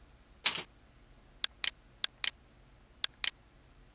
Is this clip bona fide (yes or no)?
yes